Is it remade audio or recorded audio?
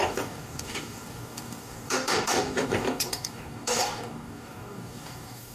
remade